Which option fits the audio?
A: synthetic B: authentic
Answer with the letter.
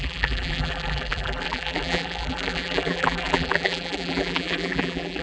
A